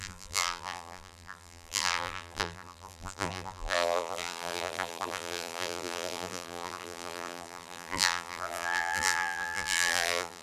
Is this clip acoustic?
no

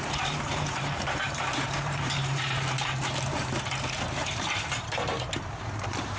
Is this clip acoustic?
no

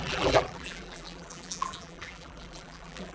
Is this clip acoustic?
no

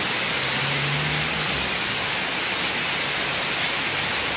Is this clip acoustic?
yes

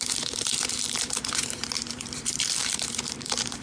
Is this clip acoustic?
no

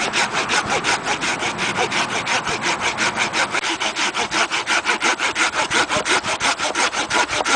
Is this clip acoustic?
yes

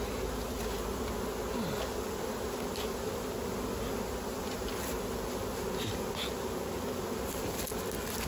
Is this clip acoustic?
yes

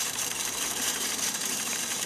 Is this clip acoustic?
no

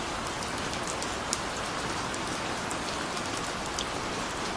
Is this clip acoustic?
yes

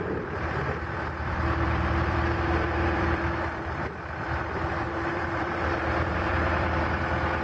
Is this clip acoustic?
no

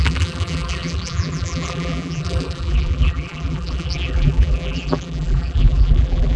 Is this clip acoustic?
no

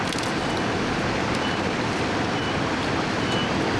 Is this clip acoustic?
yes